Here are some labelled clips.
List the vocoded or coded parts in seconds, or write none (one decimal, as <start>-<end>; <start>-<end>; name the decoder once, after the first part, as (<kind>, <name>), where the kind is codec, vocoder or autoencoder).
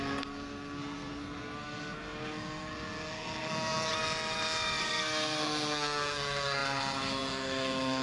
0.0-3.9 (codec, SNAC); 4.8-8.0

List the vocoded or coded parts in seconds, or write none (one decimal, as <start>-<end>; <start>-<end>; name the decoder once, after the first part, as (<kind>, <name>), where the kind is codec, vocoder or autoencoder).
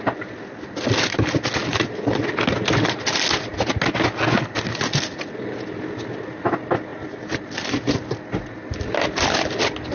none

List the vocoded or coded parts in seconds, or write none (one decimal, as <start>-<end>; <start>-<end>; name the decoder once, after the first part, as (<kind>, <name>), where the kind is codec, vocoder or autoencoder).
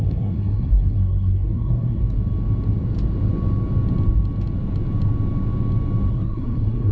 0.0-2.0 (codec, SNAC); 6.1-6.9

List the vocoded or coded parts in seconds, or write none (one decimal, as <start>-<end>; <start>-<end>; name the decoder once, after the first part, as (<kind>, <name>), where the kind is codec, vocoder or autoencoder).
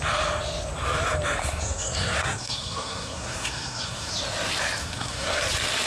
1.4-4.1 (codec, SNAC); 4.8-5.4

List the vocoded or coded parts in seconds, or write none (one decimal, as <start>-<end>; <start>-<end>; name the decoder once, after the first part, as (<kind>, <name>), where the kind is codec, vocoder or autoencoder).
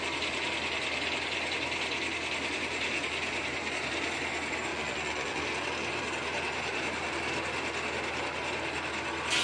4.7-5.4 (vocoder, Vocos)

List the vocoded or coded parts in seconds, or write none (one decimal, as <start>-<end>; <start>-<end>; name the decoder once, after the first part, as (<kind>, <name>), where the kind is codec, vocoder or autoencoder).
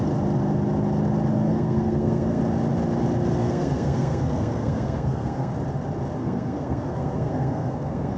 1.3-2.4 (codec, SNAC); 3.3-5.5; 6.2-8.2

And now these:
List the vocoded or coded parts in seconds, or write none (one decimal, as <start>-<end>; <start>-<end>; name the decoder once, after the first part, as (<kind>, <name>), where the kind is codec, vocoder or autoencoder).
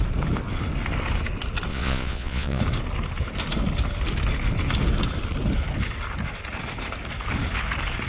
1.7-2.6 (vocoder, Vocos)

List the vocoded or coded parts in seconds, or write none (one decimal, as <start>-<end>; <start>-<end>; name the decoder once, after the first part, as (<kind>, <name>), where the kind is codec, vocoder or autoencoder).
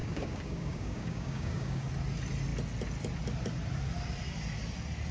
0.0-1.9 (codec, DAC)